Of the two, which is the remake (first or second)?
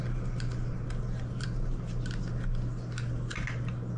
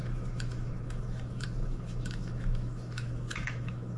second